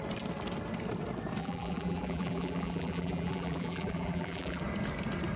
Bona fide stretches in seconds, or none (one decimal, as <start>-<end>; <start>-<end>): 0.0-1.4; 4.6-5.4